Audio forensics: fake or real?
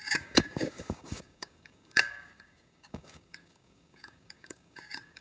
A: fake